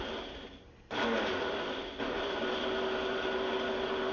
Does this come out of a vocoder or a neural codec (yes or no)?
no